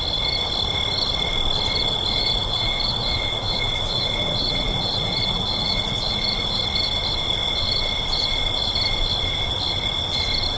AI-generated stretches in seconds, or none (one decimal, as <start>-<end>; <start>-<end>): 1.8-6.6